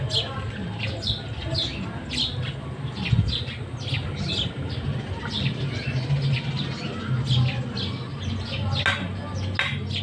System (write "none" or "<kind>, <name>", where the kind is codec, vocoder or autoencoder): none